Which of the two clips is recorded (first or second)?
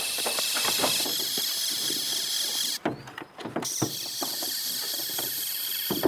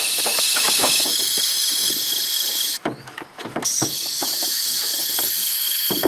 first